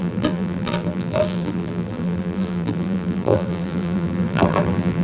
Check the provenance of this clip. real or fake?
fake